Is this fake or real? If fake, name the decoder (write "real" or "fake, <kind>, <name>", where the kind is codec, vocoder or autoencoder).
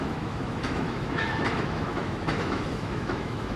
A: fake, autoencoder, DAC-VAE